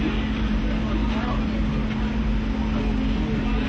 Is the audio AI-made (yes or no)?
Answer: no